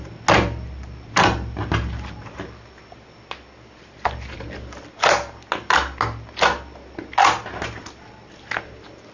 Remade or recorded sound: recorded